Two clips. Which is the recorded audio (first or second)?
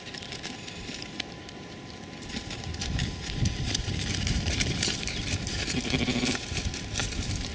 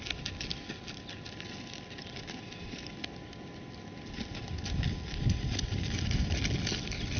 second